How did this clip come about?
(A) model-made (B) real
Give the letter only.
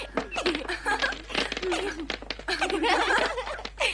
B